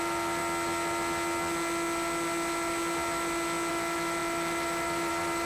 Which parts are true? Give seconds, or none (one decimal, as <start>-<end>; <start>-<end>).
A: 0.4-3.7